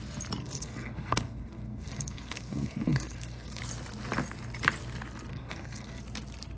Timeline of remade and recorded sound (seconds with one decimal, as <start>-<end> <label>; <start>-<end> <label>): 0.0-0.4 recorded; 0.4-3.6 remade; 3.6-5.3 recorded; 5.3-6.0 remade; 6.0-6.6 recorded